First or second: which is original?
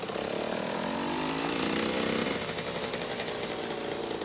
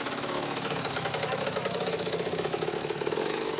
first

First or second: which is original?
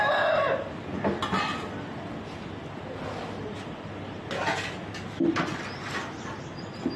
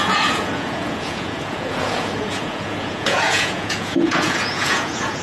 first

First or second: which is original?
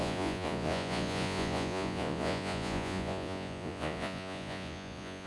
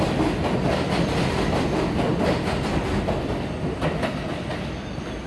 second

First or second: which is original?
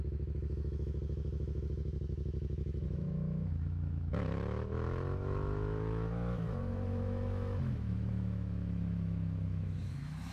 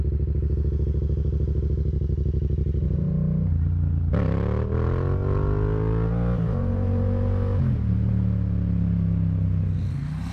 second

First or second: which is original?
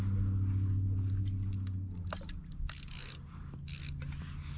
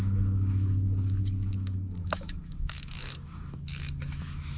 first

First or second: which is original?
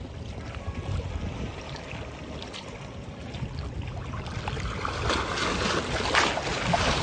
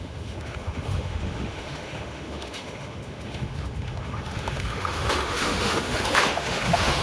first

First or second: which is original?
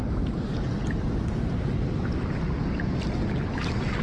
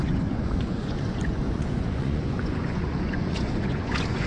first